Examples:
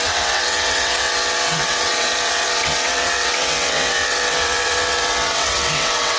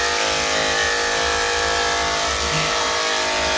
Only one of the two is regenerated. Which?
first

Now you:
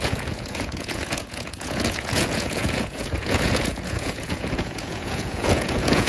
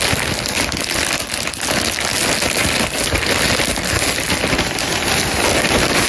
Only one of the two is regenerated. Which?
first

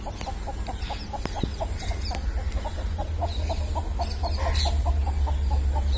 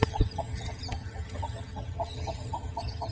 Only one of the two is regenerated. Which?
second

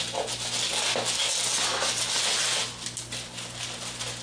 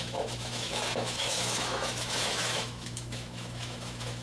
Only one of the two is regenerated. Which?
second